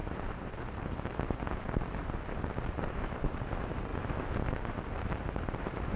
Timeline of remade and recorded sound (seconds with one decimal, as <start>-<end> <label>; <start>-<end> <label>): 0.0-3.9 remade; 3.9-4.5 recorded; 4.5-6.0 remade

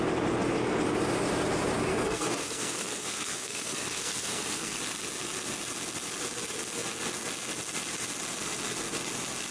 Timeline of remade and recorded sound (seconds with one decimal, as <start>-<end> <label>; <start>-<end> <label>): 0.0-1.9 recorded; 1.9-4.8 remade; 4.8-9.5 recorded

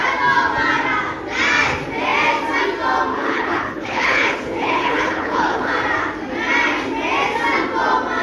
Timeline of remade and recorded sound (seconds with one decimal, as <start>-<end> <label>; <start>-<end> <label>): 0.0-3.1 recorded; 3.1-5.7 remade; 5.7-8.2 recorded